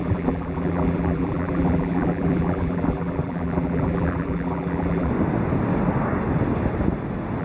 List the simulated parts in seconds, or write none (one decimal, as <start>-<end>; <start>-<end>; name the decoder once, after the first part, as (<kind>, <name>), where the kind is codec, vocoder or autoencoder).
0.0-5.1 (vocoder, BigVGAN v2)